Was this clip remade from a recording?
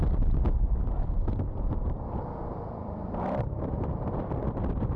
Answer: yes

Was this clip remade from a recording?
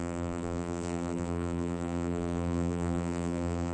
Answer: yes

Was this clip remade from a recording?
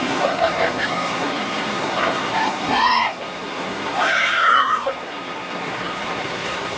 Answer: yes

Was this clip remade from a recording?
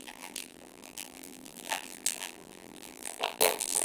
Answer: yes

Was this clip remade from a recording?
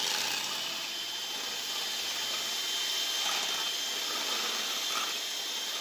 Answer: no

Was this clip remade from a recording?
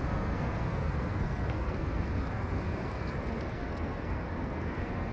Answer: yes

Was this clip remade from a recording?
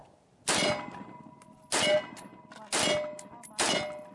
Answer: no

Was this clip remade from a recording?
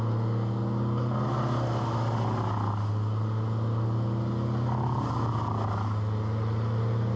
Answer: no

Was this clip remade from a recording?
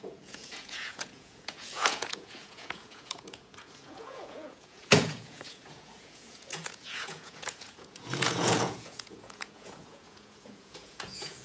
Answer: yes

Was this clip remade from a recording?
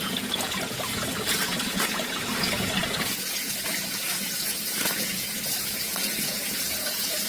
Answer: yes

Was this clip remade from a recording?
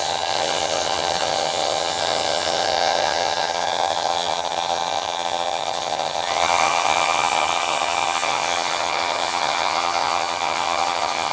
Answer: yes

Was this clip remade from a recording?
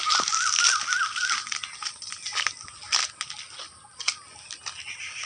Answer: no